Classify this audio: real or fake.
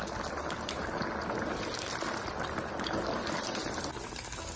real